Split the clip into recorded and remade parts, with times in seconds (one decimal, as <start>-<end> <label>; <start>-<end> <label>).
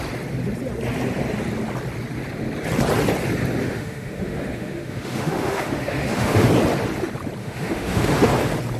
0.0-3.6 recorded; 3.6-6.5 remade; 6.5-7.4 recorded; 7.4-8.3 remade; 8.3-8.8 recorded